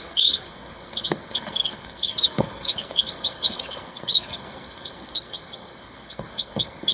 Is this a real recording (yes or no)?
no